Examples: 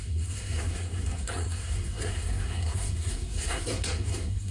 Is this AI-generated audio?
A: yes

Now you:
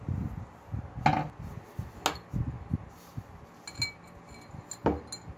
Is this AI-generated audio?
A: no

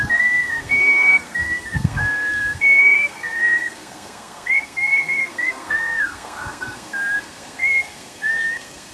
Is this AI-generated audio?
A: yes